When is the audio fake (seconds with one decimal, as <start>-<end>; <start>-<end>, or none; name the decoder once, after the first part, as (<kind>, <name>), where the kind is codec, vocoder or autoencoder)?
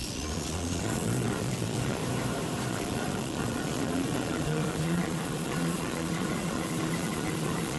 0.0-2.0 (vocoder, Vocos); 2.7-7.8